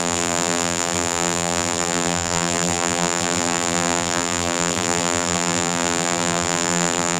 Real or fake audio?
fake